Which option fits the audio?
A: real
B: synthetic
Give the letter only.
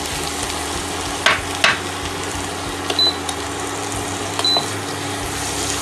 A